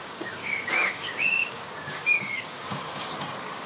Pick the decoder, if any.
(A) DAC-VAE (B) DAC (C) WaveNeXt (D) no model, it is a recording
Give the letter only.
B